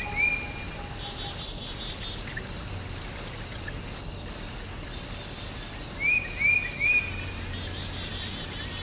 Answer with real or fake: real